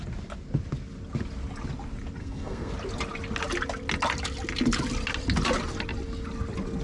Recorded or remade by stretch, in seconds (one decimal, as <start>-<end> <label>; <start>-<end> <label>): 0.0-2.2 recorded; 2.2-2.7 remade; 2.7-6.8 recorded